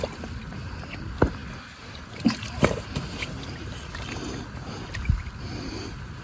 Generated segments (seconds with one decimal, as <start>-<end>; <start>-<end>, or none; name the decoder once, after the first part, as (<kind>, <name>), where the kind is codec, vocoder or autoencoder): none